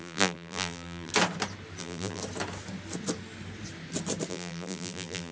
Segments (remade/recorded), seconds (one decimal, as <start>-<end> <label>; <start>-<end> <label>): 0.0-1.1 remade; 1.1-1.8 recorded; 1.8-2.2 remade; 2.2-4.3 recorded; 4.3-5.3 remade